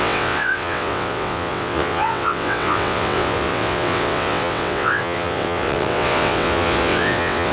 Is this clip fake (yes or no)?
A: yes